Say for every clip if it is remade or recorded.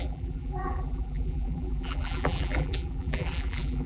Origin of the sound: remade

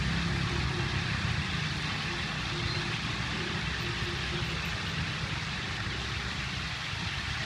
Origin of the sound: recorded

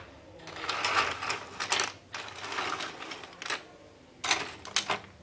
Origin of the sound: recorded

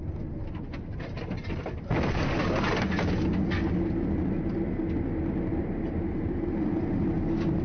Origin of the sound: recorded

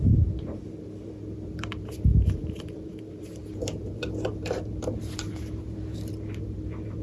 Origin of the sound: remade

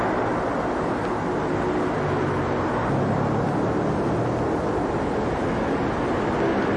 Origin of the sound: recorded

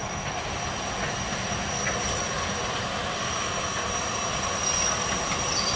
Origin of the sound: recorded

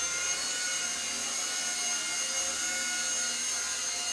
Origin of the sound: recorded